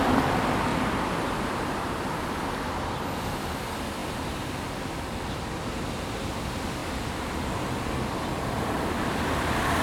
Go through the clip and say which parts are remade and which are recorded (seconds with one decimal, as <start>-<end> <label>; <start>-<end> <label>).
0.0-0.7 recorded; 0.7-3.2 remade; 3.2-6.8 recorded; 6.8-9.8 remade